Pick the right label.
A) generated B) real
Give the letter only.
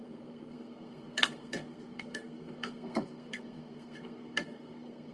A